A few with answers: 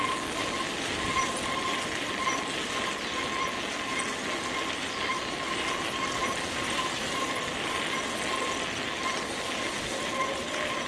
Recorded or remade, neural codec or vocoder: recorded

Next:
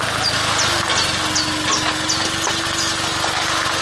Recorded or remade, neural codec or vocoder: recorded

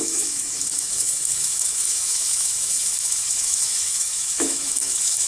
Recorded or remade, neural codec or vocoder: remade, autoencoder, DAC-VAE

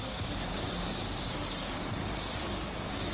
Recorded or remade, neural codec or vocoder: recorded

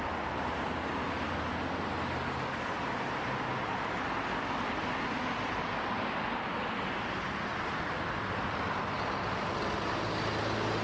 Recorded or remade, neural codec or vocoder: recorded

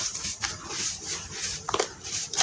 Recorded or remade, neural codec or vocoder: recorded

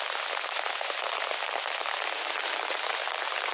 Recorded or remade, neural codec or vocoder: recorded